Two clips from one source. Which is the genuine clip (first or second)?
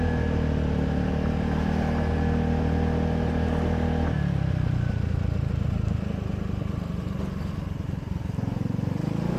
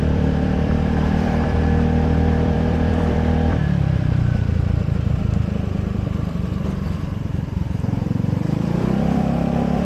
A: first